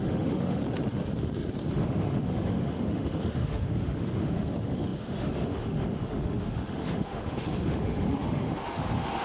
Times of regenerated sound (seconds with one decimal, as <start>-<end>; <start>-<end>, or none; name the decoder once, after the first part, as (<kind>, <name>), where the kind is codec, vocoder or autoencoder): 0.0-0.6 (autoencoder, DAC-VAE); 1.7-9.2